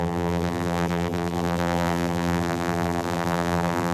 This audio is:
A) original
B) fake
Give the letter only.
B